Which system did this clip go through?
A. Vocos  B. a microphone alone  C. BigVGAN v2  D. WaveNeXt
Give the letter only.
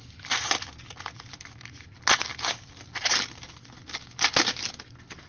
B